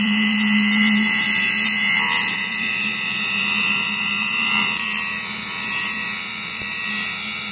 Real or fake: fake